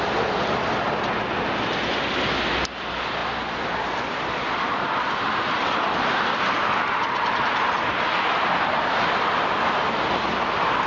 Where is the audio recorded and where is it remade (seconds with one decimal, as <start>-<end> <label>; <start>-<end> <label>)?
0.0-10.9 recorded